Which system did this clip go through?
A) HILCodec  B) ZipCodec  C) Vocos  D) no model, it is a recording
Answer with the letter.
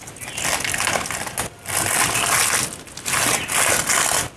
D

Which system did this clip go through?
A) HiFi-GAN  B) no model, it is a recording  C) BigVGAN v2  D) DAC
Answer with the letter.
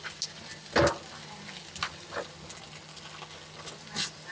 B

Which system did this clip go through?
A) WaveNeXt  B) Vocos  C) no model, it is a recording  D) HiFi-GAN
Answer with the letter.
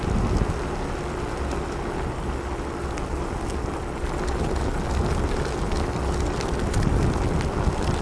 C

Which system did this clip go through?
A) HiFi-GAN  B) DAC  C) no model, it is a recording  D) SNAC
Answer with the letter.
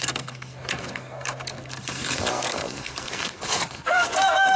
D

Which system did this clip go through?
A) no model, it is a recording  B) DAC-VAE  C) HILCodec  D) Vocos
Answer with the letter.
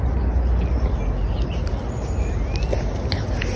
A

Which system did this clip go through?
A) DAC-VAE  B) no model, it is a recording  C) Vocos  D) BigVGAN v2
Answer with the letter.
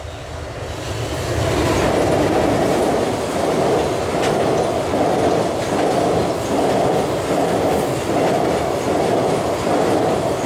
B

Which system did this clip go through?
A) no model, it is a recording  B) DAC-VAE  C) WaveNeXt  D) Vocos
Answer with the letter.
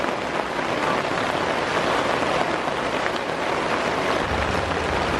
A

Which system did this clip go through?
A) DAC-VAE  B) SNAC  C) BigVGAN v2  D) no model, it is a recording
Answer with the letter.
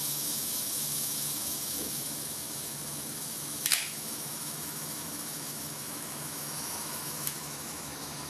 A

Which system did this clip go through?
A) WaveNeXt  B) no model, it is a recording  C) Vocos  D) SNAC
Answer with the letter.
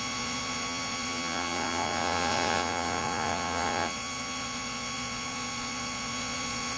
C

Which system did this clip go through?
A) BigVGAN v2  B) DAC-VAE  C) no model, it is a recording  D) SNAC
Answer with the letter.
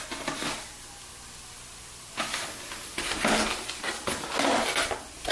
C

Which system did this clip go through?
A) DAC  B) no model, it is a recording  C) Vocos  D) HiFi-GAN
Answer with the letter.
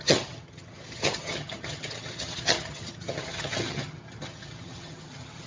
D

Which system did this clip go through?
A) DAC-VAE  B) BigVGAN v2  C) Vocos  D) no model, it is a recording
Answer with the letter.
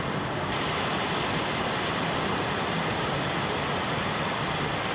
D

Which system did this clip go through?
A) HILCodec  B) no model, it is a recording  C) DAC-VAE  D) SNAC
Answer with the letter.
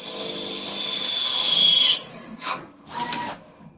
B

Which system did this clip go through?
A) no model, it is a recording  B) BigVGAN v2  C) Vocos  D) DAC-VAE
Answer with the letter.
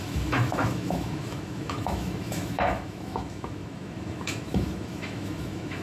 D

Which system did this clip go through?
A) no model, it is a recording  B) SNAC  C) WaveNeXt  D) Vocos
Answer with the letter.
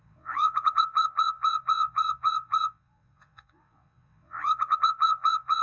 C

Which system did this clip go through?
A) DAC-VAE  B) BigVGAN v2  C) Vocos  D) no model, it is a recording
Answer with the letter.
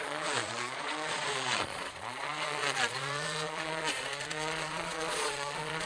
C